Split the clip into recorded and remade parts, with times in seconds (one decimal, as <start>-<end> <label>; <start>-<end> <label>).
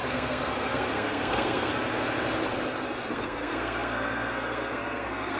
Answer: 0.0-1.7 remade; 1.7-3.1 recorded; 3.1-5.4 remade